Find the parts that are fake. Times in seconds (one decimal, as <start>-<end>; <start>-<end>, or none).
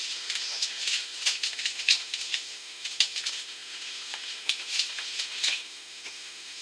0.0-6.6